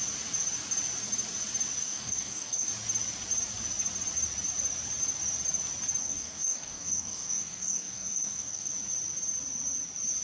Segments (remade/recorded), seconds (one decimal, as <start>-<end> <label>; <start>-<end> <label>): 0.0-1.8 recorded; 1.8-2.7 remade; 2.7-6.0 recorded; 6.0-8.7 remade; 8.7-10.2 recorded